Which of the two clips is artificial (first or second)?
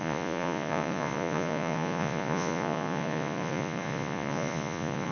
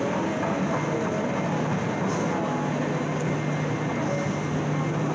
first